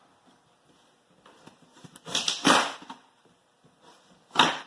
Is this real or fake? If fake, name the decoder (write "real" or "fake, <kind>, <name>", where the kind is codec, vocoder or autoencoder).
real